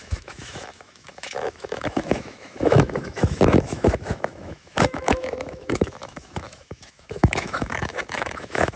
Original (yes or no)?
no